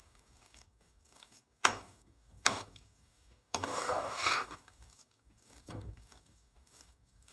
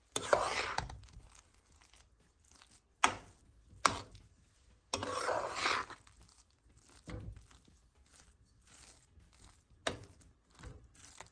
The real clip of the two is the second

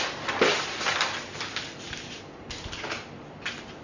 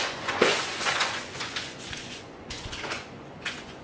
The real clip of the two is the first